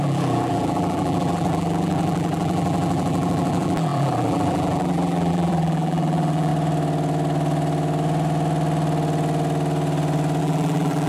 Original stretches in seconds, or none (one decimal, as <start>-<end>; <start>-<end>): 6.5-10.4